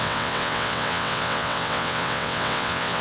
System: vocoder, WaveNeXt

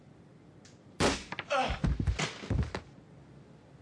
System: none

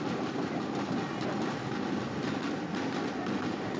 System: none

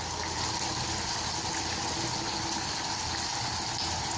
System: none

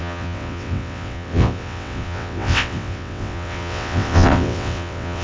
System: vocoder, WaveNeXt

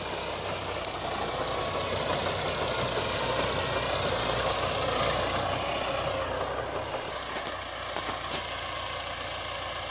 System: none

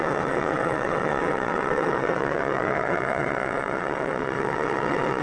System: vocoder, WaveNeXt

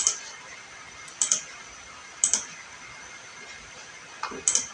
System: none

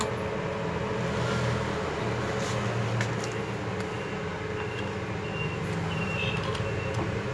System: none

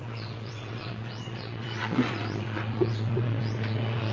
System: vocoder, WaveNeXt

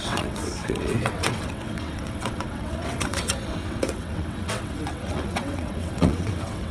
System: vocoder, WaveNeXt